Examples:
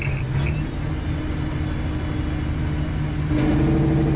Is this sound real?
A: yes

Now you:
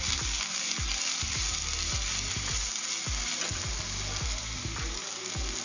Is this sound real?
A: yes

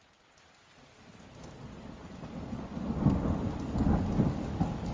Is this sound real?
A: yes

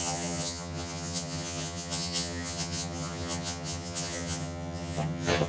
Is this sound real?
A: no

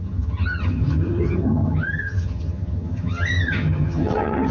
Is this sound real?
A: no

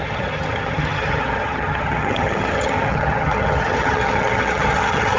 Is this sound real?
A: no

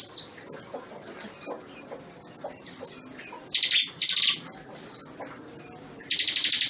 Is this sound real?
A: yes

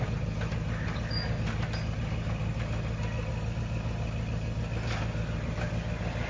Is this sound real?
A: yes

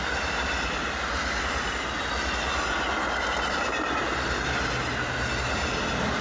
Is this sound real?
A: yes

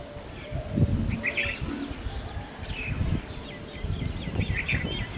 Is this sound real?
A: yes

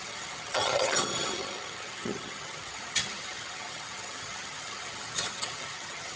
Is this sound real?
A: no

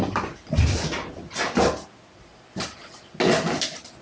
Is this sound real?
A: yes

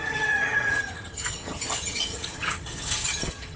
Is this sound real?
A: no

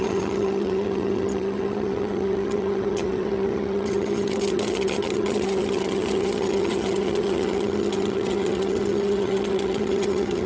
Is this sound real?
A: no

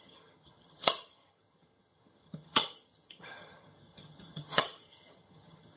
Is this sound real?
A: no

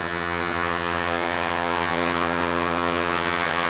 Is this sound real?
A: no